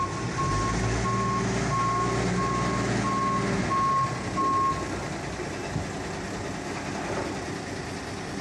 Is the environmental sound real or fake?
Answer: real